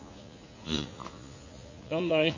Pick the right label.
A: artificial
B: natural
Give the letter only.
A